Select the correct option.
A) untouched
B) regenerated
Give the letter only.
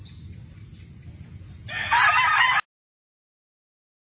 A